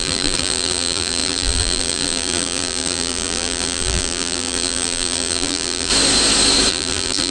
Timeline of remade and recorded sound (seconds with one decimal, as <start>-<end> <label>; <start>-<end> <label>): 0.0-5.9 remade; 5.9-6.7 recorded; 6.7-7.3 remade